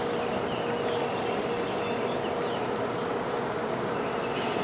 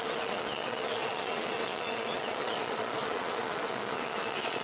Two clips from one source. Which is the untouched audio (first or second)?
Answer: first